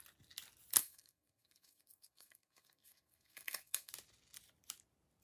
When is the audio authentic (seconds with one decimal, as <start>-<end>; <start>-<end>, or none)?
0.0-0.8; 3.9-5.2